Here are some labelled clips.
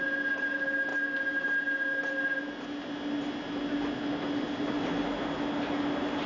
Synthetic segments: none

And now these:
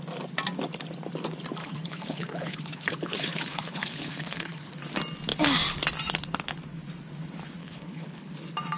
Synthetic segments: 1.6-4.7 (codec, HILCodec); 7.6-8.3

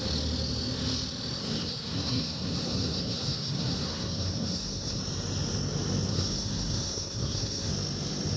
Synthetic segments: 1.4-5.0 (codec, SNAC); 6.1-7.7

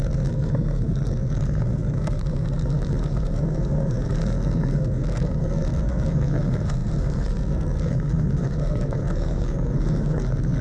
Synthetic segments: 0.0-10.6 (codec, SNAC)